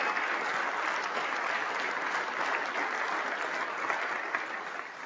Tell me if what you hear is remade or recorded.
recorded